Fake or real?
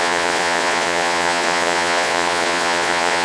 fake